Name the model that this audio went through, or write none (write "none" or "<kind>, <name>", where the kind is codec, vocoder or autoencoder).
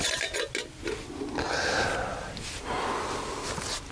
none